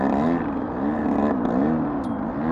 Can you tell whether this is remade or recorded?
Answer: recorded